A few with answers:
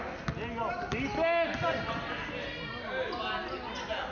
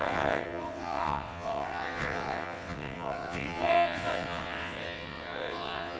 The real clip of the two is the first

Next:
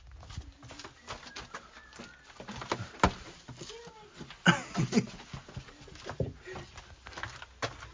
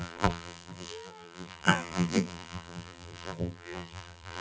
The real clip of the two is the first